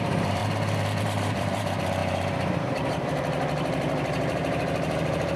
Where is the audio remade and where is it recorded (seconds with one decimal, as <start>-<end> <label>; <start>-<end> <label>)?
0.0-0.4 remade; 0.4-1.0 recorded; 1.0-5.4 remade